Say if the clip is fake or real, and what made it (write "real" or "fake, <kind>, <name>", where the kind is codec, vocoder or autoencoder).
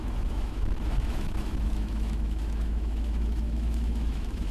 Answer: fake, autoencoder, DAC-VAE